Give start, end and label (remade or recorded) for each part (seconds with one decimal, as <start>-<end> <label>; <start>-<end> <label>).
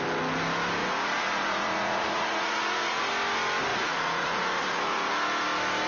0.0-0.8 recorded; 0.8-3.1 remade; 3.1-3.7 recorded; 3.7-5.1 remade; 5.1-5.9 recorded